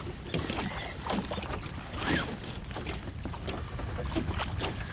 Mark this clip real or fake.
real